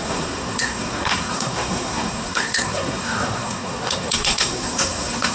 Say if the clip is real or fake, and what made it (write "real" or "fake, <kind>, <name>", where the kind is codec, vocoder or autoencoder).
fake, codec, SNAC